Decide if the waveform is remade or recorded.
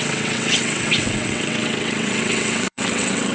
remade